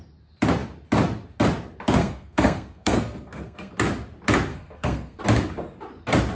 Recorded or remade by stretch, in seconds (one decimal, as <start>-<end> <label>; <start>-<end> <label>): 0.0-2.0 recorded; 2.0-3.7 remade; 3.7-4.5 recorded; 4.5-5.2 remade; 5.2-6.3 recorded